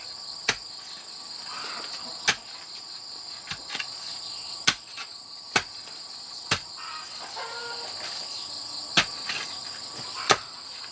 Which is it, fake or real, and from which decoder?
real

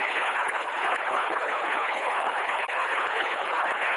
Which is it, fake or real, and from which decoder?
fake, codec, HILCodec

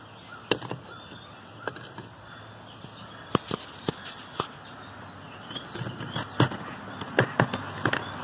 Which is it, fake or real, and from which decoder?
real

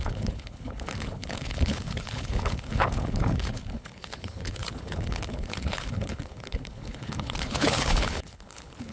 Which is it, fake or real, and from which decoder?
fake, codec, HILCodec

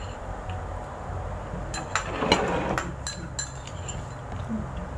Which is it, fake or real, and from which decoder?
real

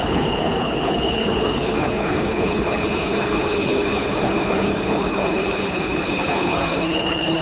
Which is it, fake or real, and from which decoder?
fake, codec, HILCodec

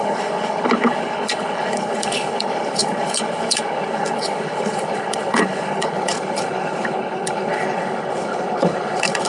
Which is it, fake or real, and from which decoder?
fake, codec, HILCodec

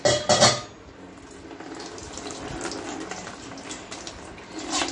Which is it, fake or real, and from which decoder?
real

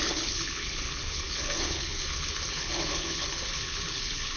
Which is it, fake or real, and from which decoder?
fake, codec, HILCodec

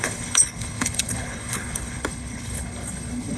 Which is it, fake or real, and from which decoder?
fake, codec, HILCodec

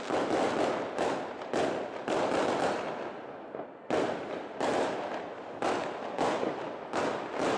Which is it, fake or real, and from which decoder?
real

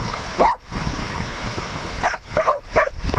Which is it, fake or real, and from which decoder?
fake, codec, HILCodec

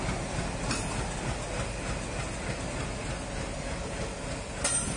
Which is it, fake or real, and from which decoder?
real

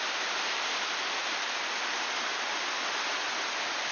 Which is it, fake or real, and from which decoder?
real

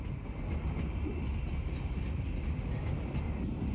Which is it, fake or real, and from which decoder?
real